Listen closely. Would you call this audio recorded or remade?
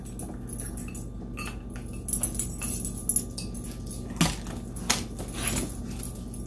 recorded